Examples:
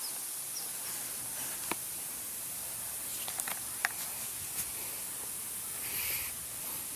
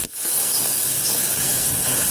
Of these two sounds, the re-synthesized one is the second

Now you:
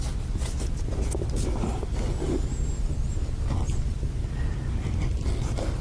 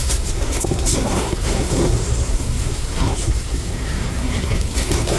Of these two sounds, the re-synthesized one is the second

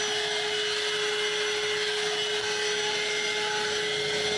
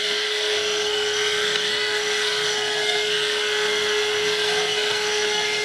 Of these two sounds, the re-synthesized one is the second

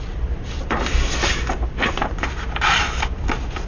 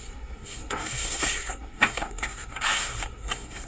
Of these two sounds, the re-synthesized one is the second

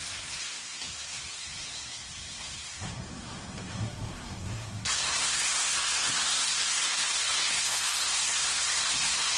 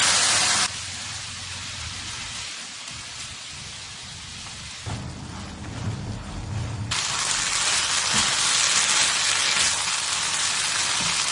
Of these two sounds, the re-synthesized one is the first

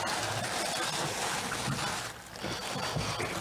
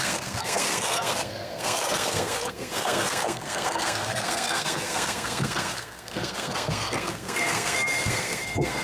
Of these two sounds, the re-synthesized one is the second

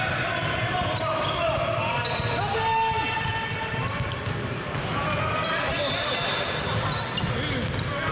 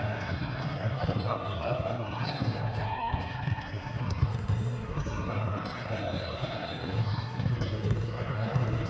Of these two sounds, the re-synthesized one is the second